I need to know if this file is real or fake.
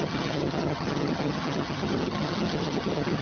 fake